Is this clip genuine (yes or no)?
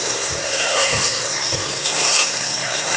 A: no